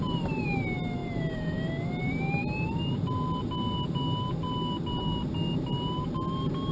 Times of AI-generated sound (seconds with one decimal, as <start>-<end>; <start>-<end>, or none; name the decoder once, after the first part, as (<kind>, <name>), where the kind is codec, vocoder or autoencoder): 1.0-1.9 (vocoder, BigVGAN v2)